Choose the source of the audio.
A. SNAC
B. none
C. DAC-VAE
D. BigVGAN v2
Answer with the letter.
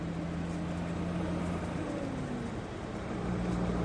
B